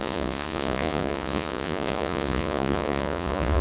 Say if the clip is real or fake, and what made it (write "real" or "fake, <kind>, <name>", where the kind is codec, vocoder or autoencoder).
fake, vocoder, Vocos